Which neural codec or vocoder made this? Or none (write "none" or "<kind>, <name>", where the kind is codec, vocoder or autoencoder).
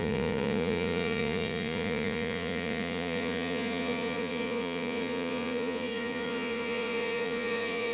vocoder, Vocos